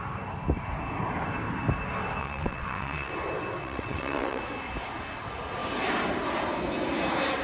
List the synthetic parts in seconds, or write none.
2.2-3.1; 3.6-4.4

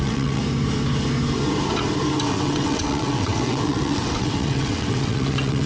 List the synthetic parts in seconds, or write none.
0.0-0.4; 2.3-5.7